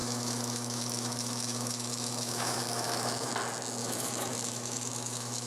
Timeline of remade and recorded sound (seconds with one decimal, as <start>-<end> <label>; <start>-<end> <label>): 0.0-3.3 remade; 3.3-3.8 recorded; 3.8-5.5 remade